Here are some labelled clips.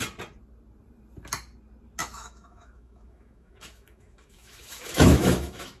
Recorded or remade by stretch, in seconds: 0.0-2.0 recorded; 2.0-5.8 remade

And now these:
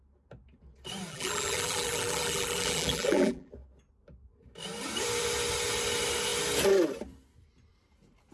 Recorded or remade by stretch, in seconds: 0.0-1.1 recorded; 1.1-3.5 remade; 3.5-8.3 recorded

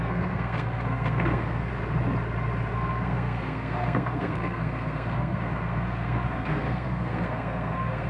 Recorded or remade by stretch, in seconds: 0.0-1.7 remade; 1.7-2.7 recorded; 2.7-8.1 remade

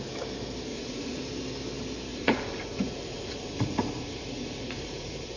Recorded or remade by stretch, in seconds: 0.0-0.7 recorded; 0.7-1.2 remade; 1.2-2.1 recorded; 2.1-5.4 remade

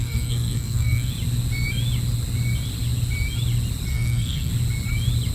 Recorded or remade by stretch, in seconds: 0.0-1.1 remade; 1.1-3.9 recorded; 3.9-4.5 remade; 4.5-5.3 recorded

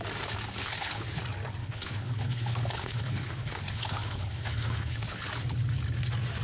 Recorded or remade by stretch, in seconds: 0.0-0.6 recorded; 0.6-1.2 remade; 1.2-1.6 recorded; 1.6-5.2 remade; 5.2-6.4 recorded